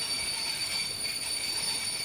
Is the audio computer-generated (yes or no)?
no